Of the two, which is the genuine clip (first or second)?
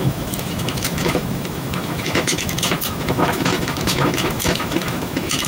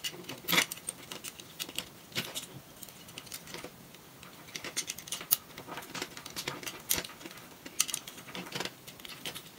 second